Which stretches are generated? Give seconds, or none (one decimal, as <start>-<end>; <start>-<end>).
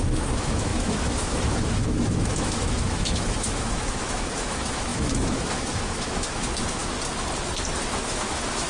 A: 0.0-6.8; 7.9-8.7